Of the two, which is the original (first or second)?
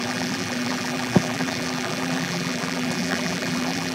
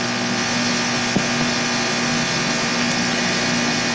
second